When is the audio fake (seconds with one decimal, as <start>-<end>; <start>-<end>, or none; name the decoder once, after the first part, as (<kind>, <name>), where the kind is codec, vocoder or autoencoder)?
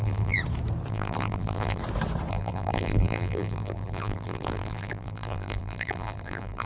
0.0-0.4 (vocoder, BigVGAN v2); 0.9-1.8; 2.3-6.7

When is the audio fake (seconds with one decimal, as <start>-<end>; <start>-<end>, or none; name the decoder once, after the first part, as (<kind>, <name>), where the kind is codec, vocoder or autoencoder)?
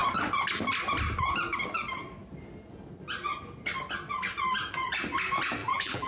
5.6-6.1 (vocoder, BigVGAN v2)